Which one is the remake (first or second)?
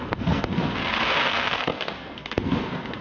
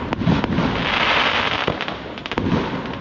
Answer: first